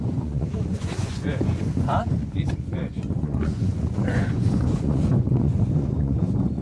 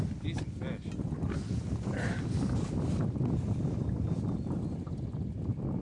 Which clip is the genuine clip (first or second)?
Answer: second